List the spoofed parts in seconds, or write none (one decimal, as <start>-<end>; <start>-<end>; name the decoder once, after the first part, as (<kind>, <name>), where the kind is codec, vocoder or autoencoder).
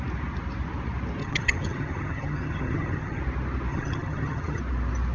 1.2-3.2 (vocoder, HiFi-GAN); 3.7-4.6